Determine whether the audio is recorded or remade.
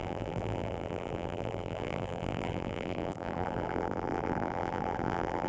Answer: remade